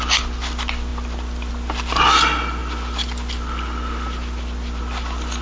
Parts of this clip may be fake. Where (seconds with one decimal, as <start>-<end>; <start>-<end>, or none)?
none